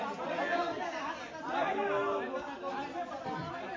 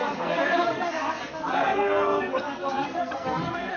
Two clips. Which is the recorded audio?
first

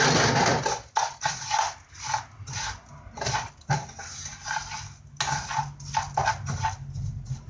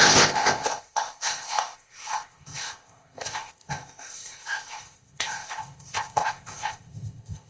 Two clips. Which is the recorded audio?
first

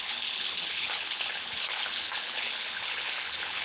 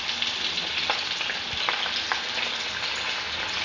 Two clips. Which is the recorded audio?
second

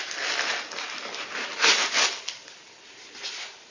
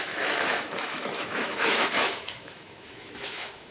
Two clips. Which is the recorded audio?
first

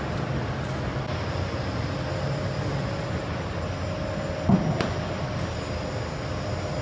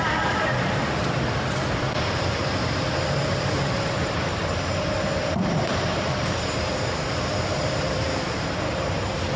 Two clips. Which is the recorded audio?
first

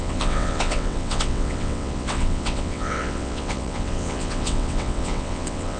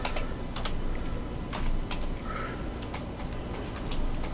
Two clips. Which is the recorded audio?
second